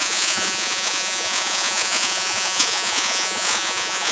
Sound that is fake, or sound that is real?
fake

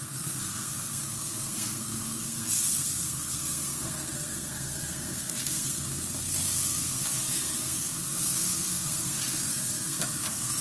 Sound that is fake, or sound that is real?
fake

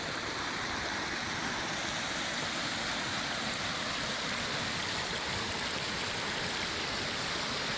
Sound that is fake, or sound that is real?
real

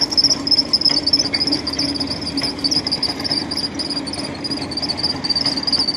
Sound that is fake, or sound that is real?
real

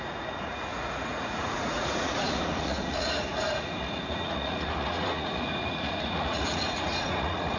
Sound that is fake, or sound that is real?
fake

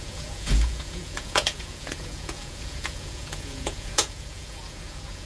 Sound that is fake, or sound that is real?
fake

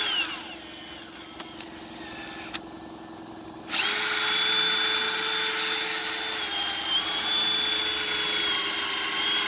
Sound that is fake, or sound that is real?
real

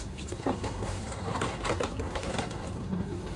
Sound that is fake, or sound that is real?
fake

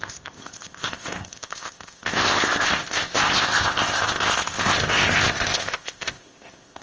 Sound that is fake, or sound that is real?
fake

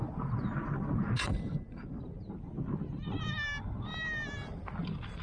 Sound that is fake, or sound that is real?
real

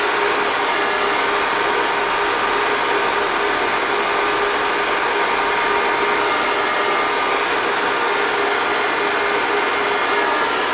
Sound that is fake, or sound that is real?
real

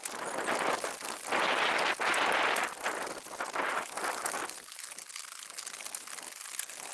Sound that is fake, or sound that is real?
real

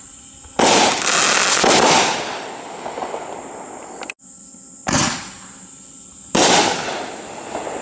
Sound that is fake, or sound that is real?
real